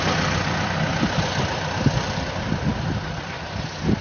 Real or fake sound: real